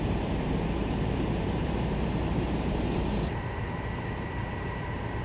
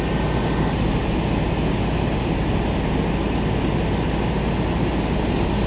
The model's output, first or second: first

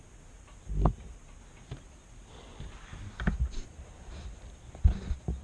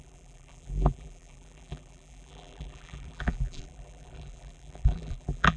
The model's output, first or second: second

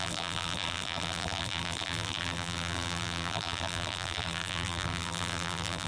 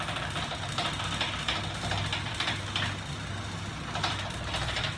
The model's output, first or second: first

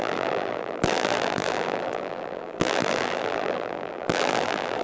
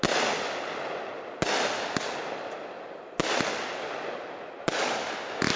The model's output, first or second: first